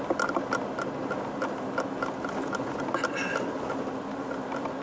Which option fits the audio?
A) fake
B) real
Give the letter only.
B